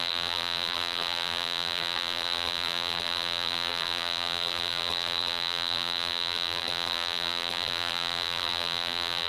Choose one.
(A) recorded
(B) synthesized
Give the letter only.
B